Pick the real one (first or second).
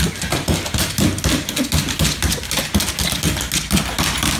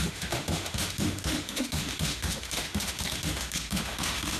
first